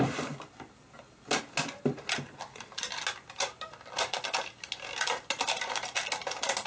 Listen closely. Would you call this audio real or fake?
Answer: real